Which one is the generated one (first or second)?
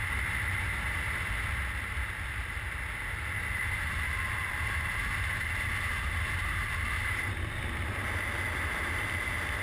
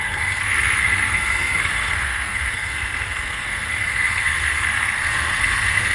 second